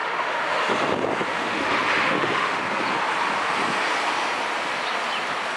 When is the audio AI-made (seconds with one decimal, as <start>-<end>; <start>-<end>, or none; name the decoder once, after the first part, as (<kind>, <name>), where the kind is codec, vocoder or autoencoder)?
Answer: 0.0-0.6 (autoencoder, DAC-VAE); 1.3-2.6